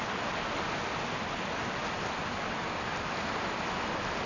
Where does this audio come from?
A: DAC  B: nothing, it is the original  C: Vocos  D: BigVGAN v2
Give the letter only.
B